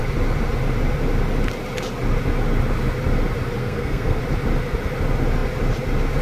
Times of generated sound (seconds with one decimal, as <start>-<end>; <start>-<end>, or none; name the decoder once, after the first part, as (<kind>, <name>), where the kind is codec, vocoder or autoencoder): 3.6-4.2 (codec, SNAC)